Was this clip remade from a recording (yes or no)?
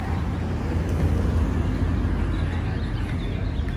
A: no